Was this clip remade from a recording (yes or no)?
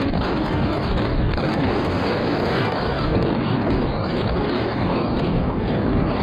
yes